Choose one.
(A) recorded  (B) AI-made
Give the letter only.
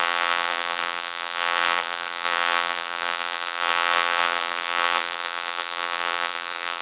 B